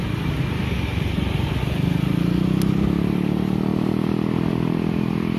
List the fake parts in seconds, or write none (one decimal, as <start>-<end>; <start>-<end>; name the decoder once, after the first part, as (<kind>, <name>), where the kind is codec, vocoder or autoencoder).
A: none